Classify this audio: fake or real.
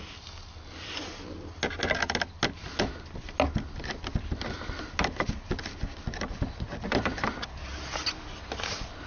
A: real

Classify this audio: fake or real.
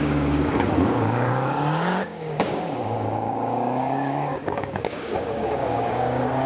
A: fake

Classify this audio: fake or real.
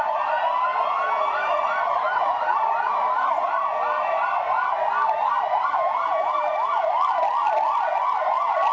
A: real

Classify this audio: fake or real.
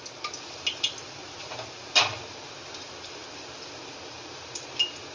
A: real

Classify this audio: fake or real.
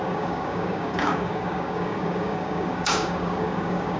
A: fake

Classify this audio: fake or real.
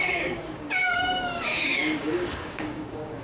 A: fake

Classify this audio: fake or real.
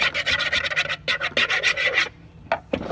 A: real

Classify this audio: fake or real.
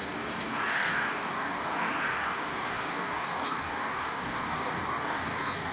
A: fake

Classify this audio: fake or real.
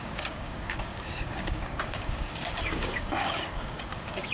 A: fake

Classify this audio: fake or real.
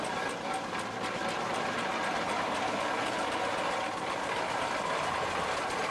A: real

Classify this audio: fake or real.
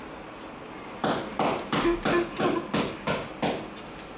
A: real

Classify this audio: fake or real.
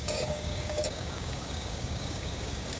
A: fake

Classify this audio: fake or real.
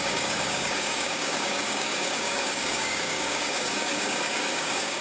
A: fake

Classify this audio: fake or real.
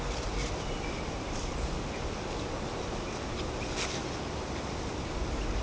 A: real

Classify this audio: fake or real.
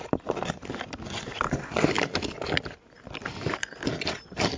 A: real